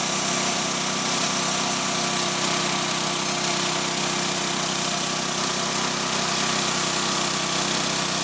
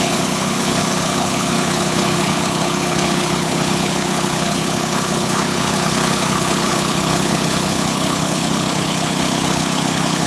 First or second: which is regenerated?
second